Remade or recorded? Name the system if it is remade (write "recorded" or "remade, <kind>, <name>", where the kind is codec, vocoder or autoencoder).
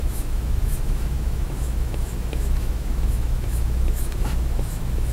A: remade, autoencoder, DAC-VAE